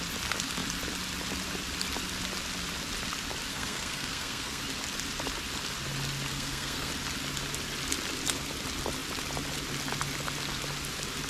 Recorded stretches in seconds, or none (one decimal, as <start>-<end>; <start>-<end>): 0.0-3.5; 4.6-6.3; 6.9-11.3